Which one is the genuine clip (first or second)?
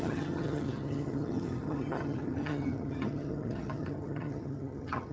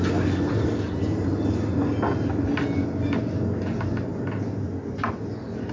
second